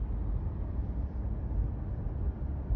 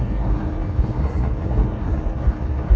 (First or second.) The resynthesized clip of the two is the second